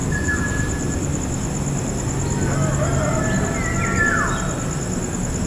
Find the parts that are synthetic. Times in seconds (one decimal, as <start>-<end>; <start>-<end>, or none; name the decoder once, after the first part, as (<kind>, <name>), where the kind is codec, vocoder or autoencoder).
0.0-1.2 (vocoder, BigVGAN v2)